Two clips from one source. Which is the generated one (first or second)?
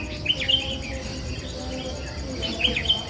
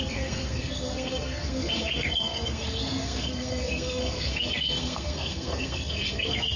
second